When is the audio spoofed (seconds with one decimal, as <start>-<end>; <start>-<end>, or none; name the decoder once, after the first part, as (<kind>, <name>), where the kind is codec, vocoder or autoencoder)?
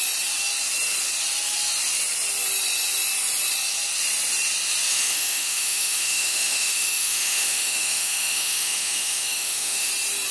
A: 4.9-9.9 (autoencoder, DAC-VAE)